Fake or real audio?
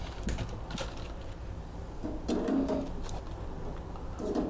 real